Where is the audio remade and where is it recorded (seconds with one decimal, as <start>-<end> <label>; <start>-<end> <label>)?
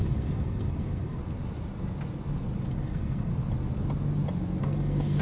0.0-1.2 remade; 1.2-2.7 recorded; 2.7-3.3 remade; 3.3-4.6 recorded; 4.6-5.2 remade